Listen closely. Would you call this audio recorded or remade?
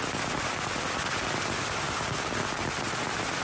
recorded